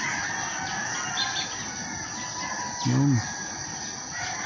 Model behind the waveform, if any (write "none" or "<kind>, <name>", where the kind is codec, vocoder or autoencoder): none